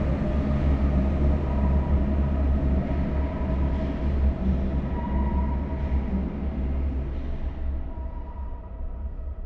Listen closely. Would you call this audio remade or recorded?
recorded